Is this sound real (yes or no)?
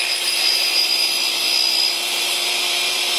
no